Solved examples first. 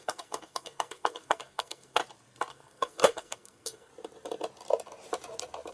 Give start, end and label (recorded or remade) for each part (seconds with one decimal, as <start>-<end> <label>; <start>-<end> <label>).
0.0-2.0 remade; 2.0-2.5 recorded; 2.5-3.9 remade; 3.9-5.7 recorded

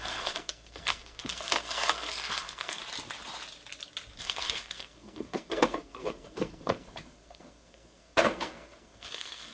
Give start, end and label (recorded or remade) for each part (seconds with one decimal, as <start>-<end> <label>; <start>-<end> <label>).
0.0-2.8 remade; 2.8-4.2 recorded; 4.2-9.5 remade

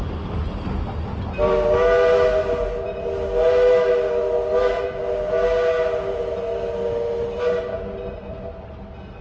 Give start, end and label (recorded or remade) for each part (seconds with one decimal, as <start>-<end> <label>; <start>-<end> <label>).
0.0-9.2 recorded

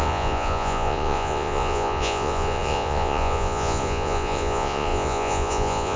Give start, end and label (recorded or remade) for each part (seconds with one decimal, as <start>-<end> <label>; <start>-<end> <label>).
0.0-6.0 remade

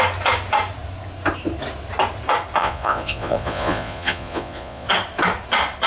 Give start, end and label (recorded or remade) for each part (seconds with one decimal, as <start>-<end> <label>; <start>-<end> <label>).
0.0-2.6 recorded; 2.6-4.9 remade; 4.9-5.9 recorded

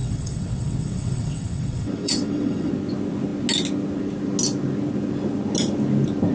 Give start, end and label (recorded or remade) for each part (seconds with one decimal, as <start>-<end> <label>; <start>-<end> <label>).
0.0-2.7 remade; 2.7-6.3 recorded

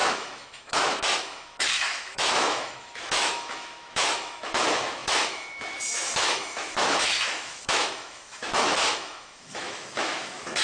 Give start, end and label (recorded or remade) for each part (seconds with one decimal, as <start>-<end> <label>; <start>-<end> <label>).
0.0-10.6 remade